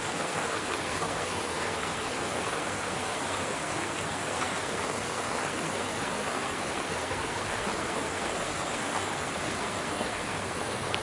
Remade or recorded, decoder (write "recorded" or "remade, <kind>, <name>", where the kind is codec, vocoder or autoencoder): remade, codec, SNAC